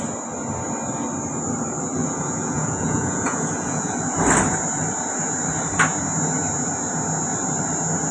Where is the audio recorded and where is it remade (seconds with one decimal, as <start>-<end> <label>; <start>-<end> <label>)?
0.0-2.0 recorded; 2.0-3.9 remade; 3.9-8.1 recorded